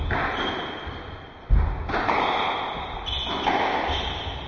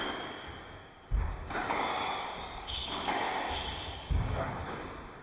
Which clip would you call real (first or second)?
first